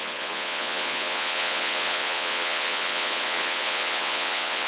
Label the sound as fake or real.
fake